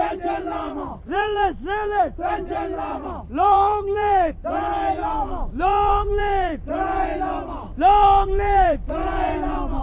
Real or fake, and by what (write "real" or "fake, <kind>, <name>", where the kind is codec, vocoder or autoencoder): fake, vocoder, BigVGAN v2